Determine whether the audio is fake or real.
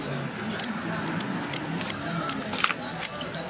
real